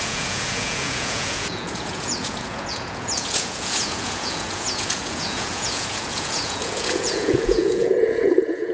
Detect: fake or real fake